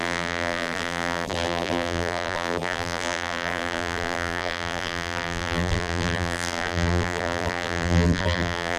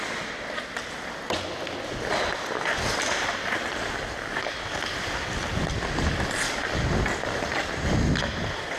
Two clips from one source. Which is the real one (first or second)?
second